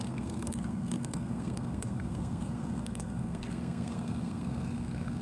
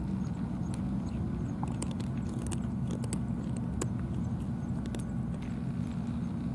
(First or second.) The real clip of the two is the second